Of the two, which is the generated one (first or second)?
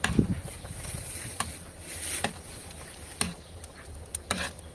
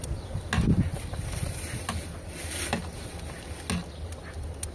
first